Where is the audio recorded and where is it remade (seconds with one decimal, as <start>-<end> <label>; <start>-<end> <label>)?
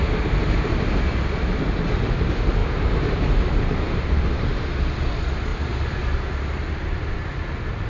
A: 0.0-2.6 recorded; 2.6-4.7 remade; 4.7-5.5 recorded; 5.5-7.3 remade; 7.3-7.9 recorded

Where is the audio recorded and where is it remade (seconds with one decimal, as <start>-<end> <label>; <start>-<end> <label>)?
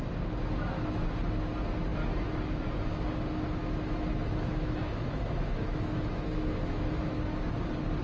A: 0.0-3.6 recorded; 3.6-7.2 remade; 7.2-8.0 recorded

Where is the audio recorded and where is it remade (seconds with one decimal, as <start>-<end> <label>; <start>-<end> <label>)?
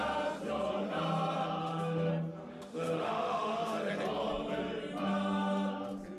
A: 0.0-1.6 recorded; 1.6-2.1 remade; 2.1-2.5 recorded; 2.5-3.9 remade; 3.9-6.2 recorded